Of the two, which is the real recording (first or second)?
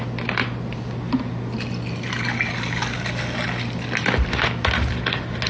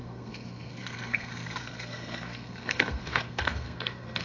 first